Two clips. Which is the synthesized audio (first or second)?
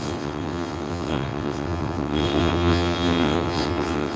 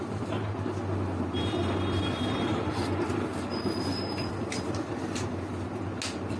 first